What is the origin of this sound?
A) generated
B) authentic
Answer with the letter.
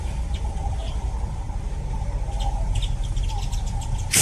B